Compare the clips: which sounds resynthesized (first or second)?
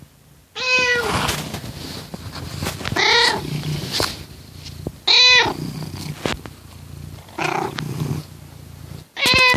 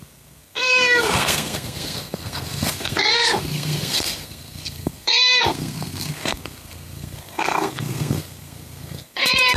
second